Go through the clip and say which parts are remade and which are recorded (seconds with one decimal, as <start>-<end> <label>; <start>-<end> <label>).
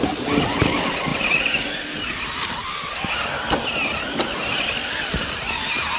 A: 0.0-6.0 recorded